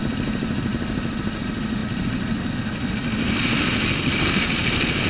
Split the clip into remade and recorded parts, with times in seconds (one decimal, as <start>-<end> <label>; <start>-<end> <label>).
0.0-1.4 remade; 1.4-1.8 recorded; 1.8-5.1 remade